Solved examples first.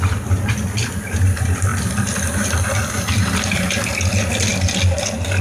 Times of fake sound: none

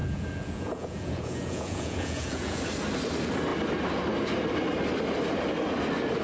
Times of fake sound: 0.0-2.6 (vocoder, Vocos)

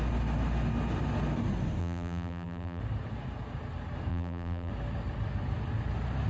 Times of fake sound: 1.8-2.8 (vocoder, BigVGAN v2); 4.1-4.7